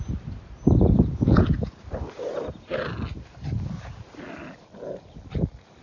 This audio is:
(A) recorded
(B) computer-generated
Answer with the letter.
A